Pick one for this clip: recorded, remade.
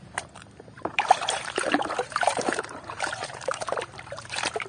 remade